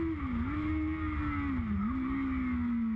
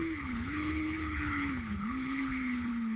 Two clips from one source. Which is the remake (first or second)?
second